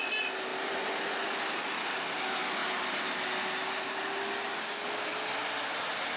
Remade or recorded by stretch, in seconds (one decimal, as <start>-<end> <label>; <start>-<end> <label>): 0.0-6.2 recorded